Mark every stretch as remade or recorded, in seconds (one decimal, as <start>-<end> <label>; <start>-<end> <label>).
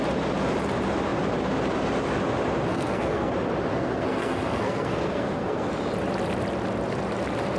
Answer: 0.0-2.7 recorded; 2.7-3.3 remade; 3.3-3.7 recorded; 3.7-5.7 remade; 5.7-7.6 recorded